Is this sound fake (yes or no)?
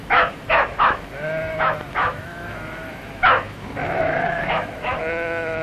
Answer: yes